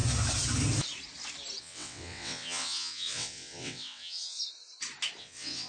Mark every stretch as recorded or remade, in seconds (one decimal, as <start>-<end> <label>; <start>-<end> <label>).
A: 0.0-1.6 recorded; 1.6-4.4 remade; 4.4-5.2 recorded; 5.2-5.7 remade